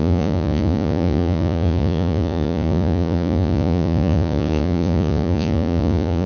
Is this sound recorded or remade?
remade